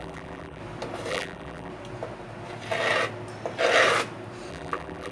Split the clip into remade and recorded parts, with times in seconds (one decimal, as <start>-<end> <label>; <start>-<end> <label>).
0.0-0.6 remade; 0.6-1.1 recorded; 1.1-1.7 remade; 1.7-4.5 recorded; 4.5-5.1 remade